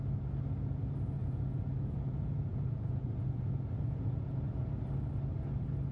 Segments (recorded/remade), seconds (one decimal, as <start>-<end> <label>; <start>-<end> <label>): 0.0-1.2 recorded; 1.2-4.7 remade; 4.7-5.9 recorded